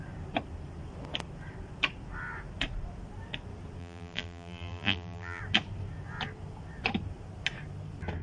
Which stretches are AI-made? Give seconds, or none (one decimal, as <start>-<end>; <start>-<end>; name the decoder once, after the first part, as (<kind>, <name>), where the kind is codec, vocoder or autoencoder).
3.8-5.4 (vocoder, BigVGAN v2)